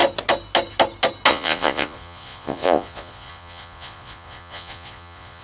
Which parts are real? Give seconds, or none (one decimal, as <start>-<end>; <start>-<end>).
0.0-1.3